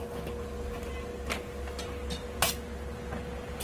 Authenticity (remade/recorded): recorded